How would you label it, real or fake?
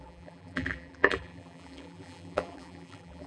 fake